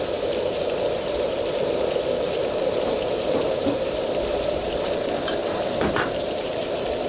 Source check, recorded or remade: remade